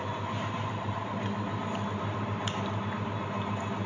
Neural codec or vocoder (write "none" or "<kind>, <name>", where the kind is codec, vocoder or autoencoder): none